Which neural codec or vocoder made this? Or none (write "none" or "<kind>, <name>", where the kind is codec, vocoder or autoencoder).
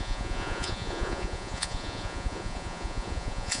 vocoder, Vocos